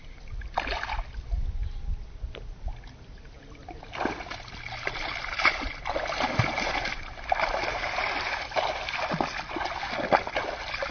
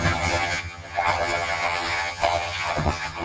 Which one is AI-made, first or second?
second